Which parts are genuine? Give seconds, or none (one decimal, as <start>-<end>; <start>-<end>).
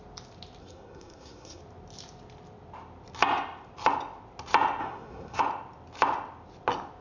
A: 0.0-0.6; 1.6-4.8; 5.4-7.0